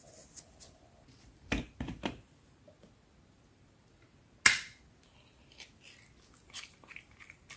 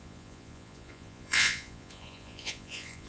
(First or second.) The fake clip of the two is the second